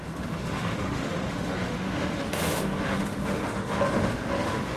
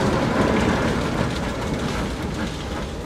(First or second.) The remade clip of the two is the first